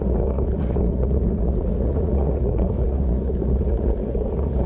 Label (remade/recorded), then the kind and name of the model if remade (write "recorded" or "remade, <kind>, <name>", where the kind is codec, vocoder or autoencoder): remade, vocoder, Vocos